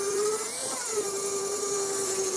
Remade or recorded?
remade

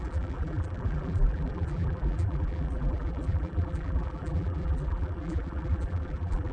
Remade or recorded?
remade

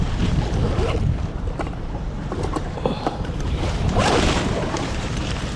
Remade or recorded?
remade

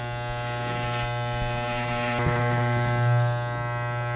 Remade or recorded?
recorded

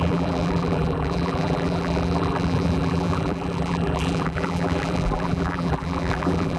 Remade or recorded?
remade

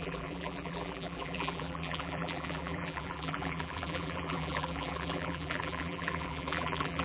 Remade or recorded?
remade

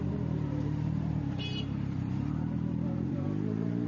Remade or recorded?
remade